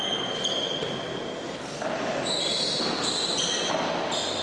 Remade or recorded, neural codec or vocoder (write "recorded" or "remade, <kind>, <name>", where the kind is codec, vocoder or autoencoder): recorded